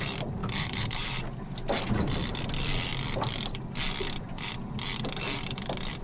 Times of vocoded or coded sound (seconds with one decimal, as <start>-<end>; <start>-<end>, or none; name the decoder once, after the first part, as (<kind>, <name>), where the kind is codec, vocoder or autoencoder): 0.4-1.2 (vocoder, BigVGAN v2)